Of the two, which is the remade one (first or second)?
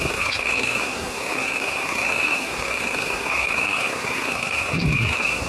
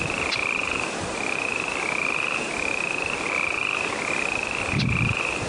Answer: first